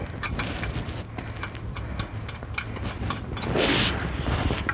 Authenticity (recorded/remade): recorded